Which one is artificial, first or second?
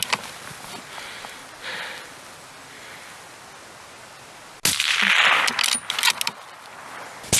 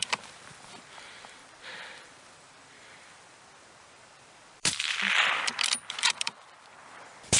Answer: second